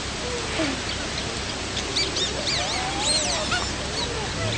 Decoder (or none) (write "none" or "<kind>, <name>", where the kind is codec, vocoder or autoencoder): none